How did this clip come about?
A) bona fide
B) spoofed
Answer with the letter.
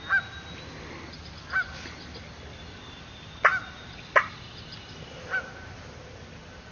A